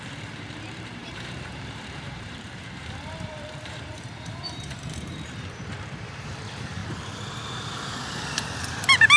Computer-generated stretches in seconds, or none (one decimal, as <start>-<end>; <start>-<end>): 0.0-6.8